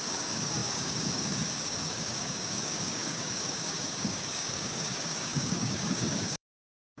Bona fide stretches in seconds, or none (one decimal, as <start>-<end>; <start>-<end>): none